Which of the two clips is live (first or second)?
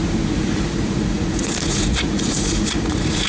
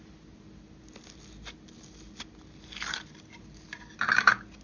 second